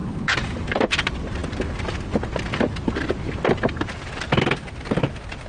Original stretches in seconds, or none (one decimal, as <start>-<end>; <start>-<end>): 0.0-5.5